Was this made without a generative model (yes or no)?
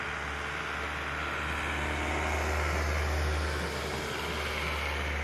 yes